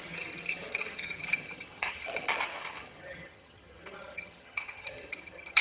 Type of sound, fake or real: fake